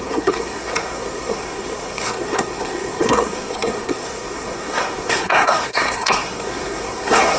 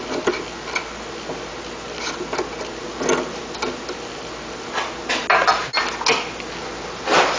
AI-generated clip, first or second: first